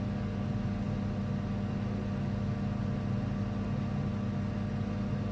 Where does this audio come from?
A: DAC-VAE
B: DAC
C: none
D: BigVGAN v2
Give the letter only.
C